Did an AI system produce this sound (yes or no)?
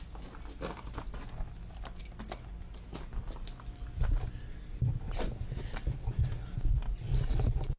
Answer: no